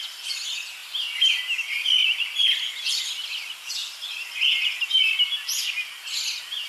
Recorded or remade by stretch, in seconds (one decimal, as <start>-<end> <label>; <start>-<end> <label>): 0.0-0.8 recorded; 0.8-1.4 remade; 1.4-6.7 recorded